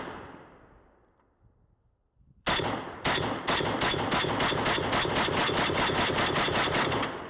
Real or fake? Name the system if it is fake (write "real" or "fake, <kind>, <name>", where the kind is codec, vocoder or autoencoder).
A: real